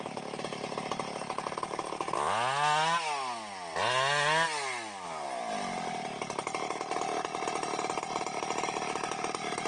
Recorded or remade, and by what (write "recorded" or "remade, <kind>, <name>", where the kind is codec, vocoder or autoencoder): recorded